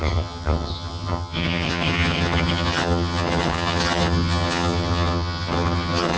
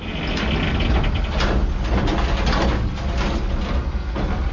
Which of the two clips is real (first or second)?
second